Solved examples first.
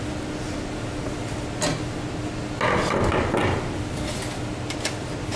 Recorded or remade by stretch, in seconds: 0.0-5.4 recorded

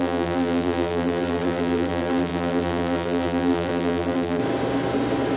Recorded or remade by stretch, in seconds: 0.0-4.4 remade; 4.4-5.4 recorded

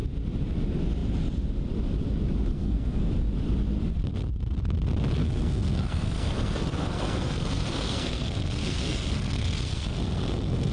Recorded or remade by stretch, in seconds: 0.0-2.5 recorded; 2.5-3.1 remade; 3.1-5.2 recorded; 5.2-10.7 remade

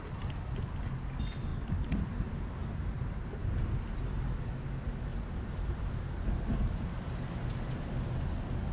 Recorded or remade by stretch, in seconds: 0.0-1.5 recorded; 1.5-2.2 remade; 2.2-2.6 recorded; 2.6-3.2 remade; 3.2-5.1 recorded; 5.1-6.1 remade; 6.1-8.7 recorded

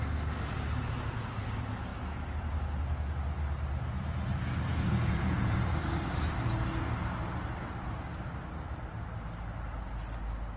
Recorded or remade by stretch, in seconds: 0.0-4.7 recorded; 4.7-5.7 remade; 5.7-10.6 recorded

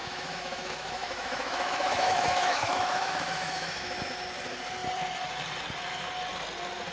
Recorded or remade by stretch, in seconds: 0.0-4.1 remade; 4.1-6.9 recorded

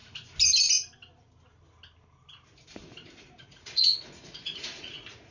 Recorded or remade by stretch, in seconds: 0.0-3.2 recorded; 3.2-5.3 remade

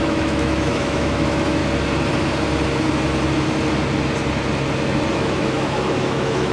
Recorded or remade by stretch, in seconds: 0.0-1.6 remade; 1.6-5.1 recorded; 5.1-6.5 remade